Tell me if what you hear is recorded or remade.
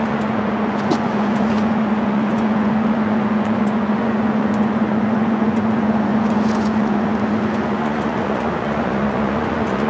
remade